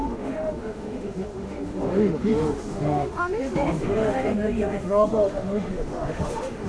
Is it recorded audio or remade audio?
remade